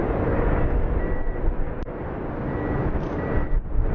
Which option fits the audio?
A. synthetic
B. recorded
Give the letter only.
B